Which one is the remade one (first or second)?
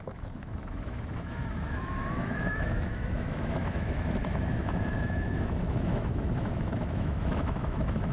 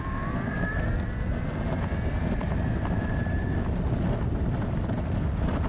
first